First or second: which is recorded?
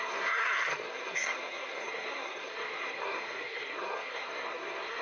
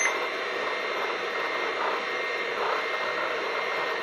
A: second